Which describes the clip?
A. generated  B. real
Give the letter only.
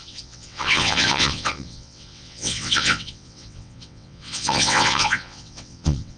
A